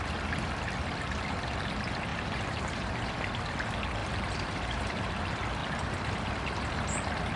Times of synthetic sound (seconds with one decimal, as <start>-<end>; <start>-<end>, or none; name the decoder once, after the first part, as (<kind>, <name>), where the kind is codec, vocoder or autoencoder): 2.1-3.1 (vocoder, BigVGAN v2); 4.0-5.1; 5.6-6.3